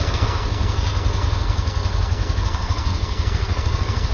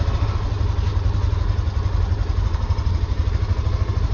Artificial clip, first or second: first